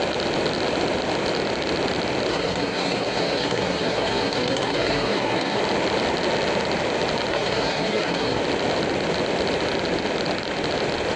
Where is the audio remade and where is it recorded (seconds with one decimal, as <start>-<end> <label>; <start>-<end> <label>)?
0.0-2.3 recorded; 2.3-5.6 remade; 5.6-7.3 recorded; 7.3-8.4 remade; 8.4-11.2 recorded